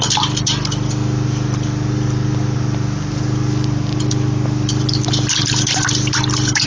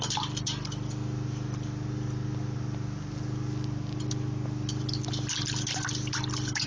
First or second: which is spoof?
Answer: first